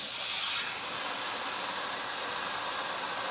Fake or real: fake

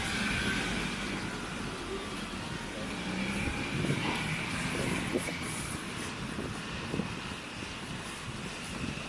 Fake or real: real